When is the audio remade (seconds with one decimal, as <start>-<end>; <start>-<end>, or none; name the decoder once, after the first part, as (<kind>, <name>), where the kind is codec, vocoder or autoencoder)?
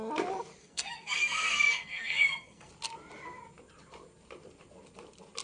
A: 0.6-2.7 (codec, SNAC)